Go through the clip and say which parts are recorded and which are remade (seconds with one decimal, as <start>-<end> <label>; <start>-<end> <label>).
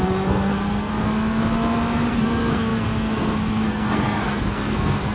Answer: 0.0-0.9 remade; 0.9-2.1 recorded; 2.1-5.1 remade